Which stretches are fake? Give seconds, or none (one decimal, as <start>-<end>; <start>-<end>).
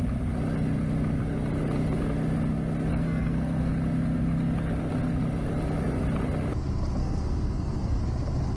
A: 2.9-3.7; 7.0-8.0